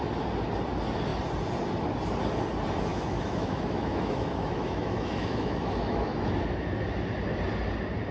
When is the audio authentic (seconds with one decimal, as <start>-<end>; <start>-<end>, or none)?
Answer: 0.0-2.9; 6.3-8.1